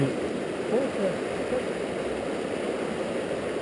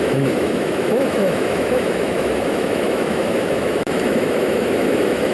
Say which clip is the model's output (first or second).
second